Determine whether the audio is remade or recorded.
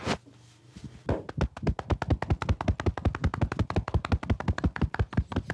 recorded